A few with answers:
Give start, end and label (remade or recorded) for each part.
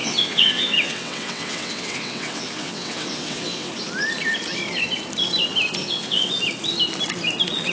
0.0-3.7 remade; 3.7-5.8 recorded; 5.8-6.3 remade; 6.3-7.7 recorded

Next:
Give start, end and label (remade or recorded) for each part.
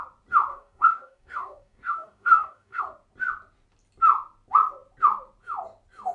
0.0-0.5 recorded; 0.5-2.8 remade; 2.8-6.1 recorded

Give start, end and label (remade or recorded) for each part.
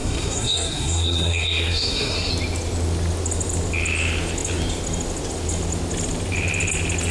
0.0-2.3 remade; 2.3-7.1 recorded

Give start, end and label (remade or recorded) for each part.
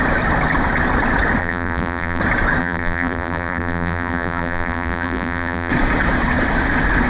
0.0-1.4 recorded; 1.4-2.2 remade; 2.2-2.6 recorded; 2.6-5.7 remade; 5.7-7.1 recorded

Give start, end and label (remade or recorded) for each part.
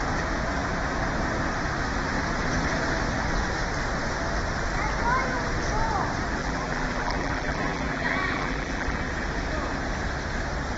0.0-6.4 recorded; 6.4-9.0 remade; 9.0-10.8 recorded